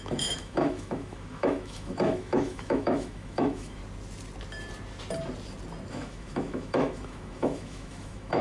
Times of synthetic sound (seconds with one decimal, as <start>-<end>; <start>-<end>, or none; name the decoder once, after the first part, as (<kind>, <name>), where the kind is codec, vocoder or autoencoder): 0.0-3.8 (autoencoder, DAC-VAE); 5.9-8.4